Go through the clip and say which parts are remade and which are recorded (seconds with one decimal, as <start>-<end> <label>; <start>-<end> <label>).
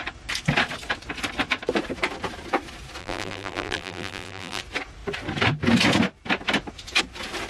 0.0-3.0 recorded; 3.0-4.6 remade; 4.6-7.5 recorded